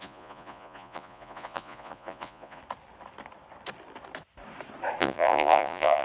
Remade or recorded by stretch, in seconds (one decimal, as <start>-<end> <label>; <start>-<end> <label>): 0.0-2.6 remade; 2.6-5.0 recorded; 5.0-6.0 remade